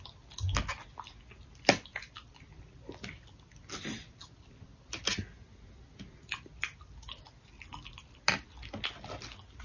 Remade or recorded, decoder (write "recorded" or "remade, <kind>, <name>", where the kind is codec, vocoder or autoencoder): recorded